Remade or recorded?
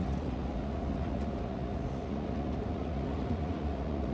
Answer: remade